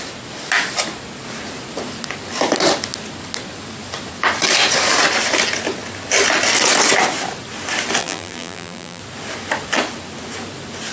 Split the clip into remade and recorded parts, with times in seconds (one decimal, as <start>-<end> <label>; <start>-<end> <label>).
0.0-8.0 recorded; 8.0-9.0 remade; 9.0-10.9 recorded